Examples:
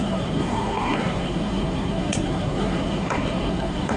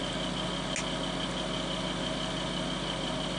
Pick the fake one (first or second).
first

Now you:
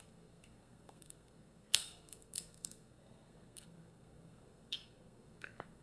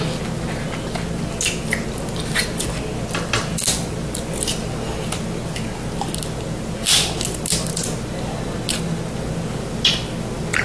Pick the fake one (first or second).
first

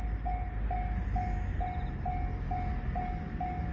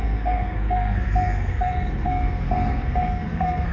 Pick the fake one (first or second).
second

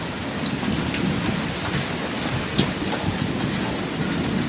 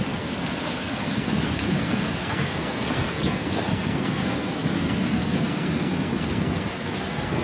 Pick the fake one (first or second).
second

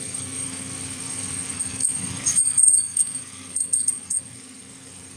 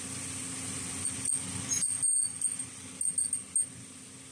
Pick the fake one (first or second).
first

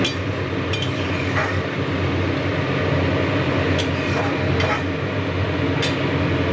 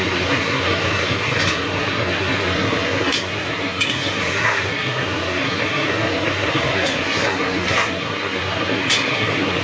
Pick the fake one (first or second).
second